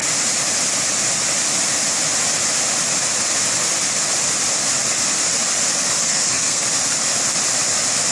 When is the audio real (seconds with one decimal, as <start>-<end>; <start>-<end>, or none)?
0.0-6.0; 6.6-8.1

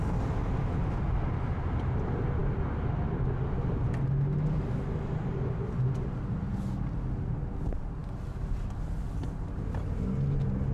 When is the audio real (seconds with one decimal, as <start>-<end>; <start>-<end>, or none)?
0.0-10.7

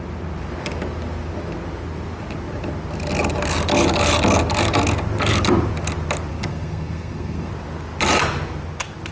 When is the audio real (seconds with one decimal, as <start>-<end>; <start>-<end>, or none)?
0.0-6.3; 7.5-9.1

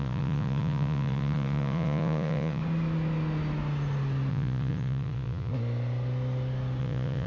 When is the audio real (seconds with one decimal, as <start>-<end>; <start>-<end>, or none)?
2.6-4.3; 5.5-6.8

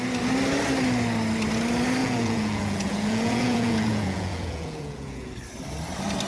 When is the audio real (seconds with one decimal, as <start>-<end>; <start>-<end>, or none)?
0.0-2.0; 5.3-6.3

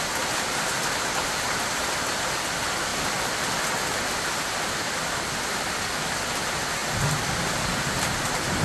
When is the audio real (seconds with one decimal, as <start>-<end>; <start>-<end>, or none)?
0.0-8.6

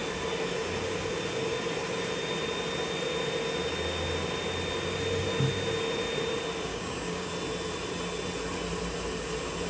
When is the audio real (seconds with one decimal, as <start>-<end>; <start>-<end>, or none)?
0.0-6.7; 7.3-9.7